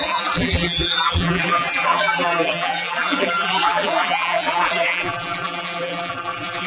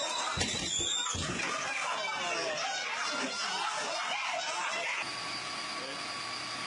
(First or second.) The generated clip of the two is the first